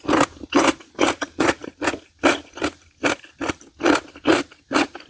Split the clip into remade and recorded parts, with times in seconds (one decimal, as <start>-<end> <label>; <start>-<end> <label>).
0.0-5.1 recorded